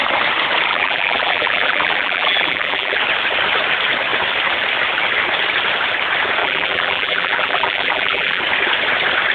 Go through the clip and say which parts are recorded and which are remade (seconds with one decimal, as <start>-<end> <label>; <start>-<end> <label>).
0.0-0.7 recorded; 0.7-3.0 remade; 3.0-6.4 recorded; 6.4-8.4 remade; 8.4-9.3 recorded